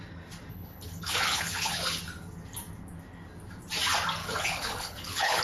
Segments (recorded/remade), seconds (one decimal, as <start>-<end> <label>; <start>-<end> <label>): 0.0-0.5 recorded; 0.5-2.0 remade; 2.0-4.2 recorded; 4.2-5.4 remade